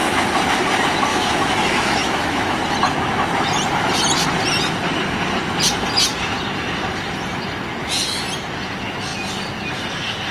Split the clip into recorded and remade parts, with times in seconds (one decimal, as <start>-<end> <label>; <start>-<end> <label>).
0.0-1.1 recorded; 1.1-2.6 remade; 2.6-10.3 recorded